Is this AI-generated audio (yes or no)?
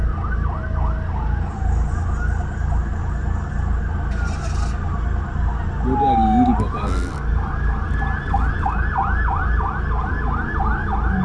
no